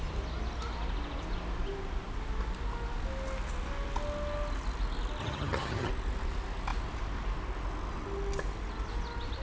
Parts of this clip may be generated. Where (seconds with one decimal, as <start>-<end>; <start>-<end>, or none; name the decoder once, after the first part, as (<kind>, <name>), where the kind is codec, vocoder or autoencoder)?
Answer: 5.2-5.9 (vocoder, HiFi-GAN)